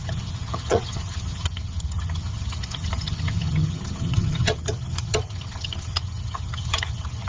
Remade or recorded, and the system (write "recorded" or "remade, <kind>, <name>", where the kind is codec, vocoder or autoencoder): remade, vocoder, HiFi-GAN